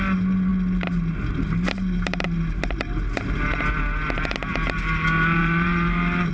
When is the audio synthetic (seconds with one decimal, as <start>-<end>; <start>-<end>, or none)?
5.4-6.3